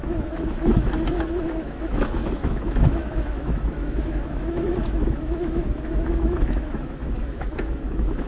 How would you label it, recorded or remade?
remade